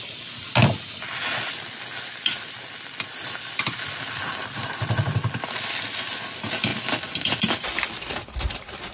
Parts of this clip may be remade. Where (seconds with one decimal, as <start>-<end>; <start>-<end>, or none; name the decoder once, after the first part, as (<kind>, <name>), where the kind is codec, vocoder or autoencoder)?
none